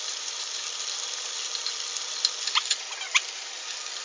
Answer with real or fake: real